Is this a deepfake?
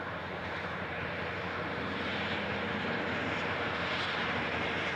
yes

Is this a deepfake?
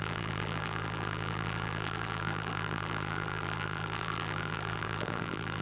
yes